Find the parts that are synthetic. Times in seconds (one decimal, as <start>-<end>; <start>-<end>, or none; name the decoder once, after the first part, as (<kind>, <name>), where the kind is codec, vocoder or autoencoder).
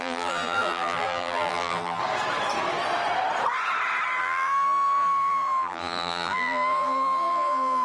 0.0-2.0 (vocoder, BigVGAN v2); 4.2-7.8